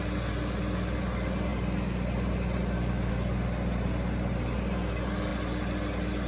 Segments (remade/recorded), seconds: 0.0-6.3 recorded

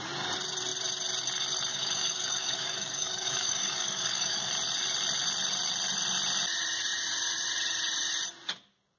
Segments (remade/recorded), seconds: 0.0-1.7 recorded; 1.7-4.5 remade; 4.5-9.0 recorded

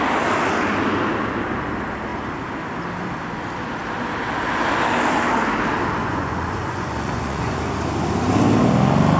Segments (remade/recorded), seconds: 0.0-6.0 recorded; 6.0-7.6 remade; 7.6-9.2 recorded

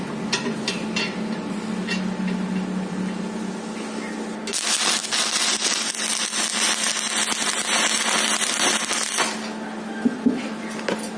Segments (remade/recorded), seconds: 0.0-11.2 recorded

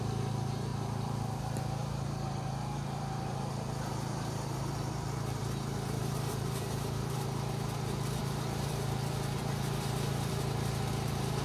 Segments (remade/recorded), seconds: 0.0-11.4 remade

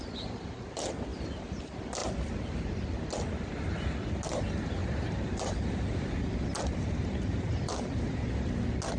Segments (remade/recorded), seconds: 0.0-1.1 recorded; 1.1-1.6 remade; 1.6-4.8 recorded; 4.8-8.5 remade; 8.5-9.0 recorded

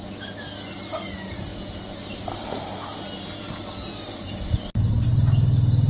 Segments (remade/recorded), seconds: 0.0-5.9 recorded

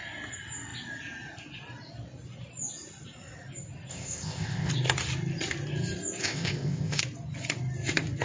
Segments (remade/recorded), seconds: 0.0-3.9 recorded; 3.9-4.7 remade; 4.7-6.2 recorded; 6.2-7.0 remade; 7.0-8.2 recorded